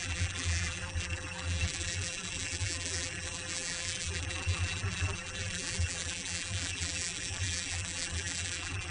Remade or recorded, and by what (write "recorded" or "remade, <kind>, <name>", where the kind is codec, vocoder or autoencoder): remade, vocoder, BigVGAN v2